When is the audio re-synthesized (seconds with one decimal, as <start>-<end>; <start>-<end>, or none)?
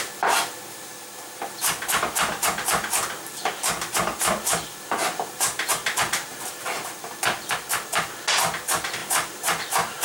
none